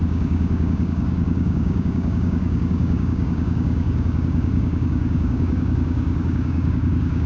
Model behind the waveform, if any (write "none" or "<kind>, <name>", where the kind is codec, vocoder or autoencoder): codec, DAC